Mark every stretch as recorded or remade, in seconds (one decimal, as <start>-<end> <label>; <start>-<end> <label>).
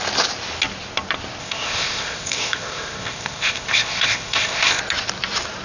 0.0-1.4 recorded; 1.4-4.8 remade; 4.8-5.6 recorded